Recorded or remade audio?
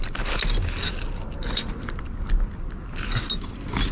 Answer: recorded